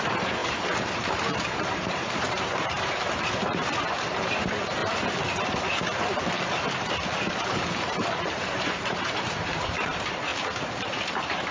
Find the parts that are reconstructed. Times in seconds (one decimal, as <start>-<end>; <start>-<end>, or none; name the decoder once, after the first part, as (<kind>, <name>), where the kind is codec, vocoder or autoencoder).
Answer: 0.0-4.8 (vocoder, BigVGAN v2); 7.3-10.3; 11.1-11.5

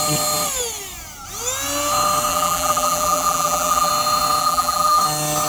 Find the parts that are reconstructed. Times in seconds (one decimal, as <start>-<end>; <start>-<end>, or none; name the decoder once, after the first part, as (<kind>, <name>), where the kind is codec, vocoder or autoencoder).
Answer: 2.3-3.9 (vocoder, BigVGAN v2); 4.4-5.0